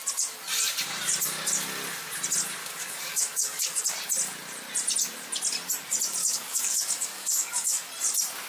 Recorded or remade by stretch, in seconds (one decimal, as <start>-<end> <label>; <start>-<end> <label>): 0.0-2.6 recorded; 2.6-3.8 remade; 3.8-6.2 recorded; 6.2-7.9 remade; 7.9-8.5 recorded